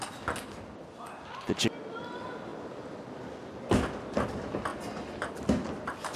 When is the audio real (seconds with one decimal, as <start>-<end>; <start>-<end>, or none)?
0.0-6.2